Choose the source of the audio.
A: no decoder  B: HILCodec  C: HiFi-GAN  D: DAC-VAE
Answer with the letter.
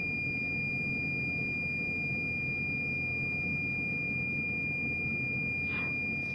A